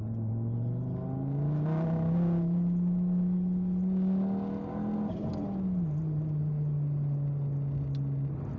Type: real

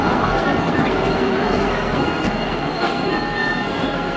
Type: fake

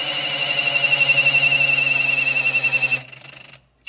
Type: real